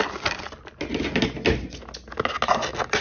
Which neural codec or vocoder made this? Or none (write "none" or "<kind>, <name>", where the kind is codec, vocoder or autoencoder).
none